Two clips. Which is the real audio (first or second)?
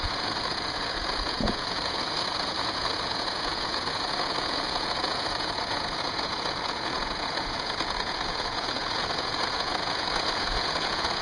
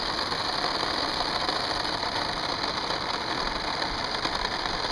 second